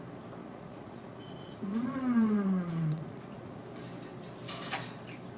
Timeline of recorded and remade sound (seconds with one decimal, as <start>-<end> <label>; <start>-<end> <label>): 0.0-0.4 recorded; 0.4-3.6 remade; 3.6-5.4 recorded